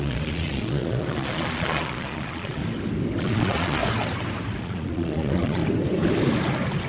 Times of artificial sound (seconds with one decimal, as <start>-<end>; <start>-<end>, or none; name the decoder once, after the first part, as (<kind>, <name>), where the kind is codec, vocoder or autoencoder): 0.0-2.6 (vocoder, Vocos); 3.2-3.8; 4.6-5.6